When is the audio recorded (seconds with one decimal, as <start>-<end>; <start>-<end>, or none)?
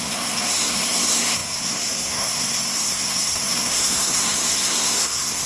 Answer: none